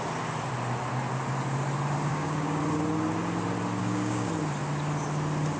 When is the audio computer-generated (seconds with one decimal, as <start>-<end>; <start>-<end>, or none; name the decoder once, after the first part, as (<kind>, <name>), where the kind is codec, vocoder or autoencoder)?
2.1-2.6 (codec, DAC); 3.8-4.3